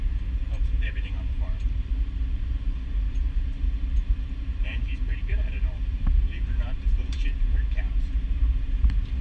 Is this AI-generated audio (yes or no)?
yes